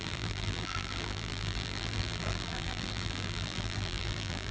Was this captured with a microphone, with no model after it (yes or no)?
no